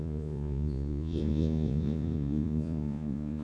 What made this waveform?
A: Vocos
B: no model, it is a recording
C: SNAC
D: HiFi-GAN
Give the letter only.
A